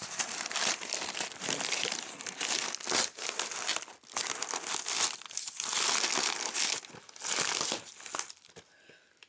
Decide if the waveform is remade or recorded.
recorded